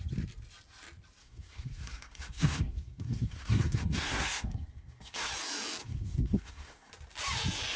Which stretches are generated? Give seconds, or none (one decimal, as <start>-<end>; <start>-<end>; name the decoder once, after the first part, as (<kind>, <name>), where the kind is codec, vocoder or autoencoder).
1.2-5.3 (codec, SNAC); 5.8-6.9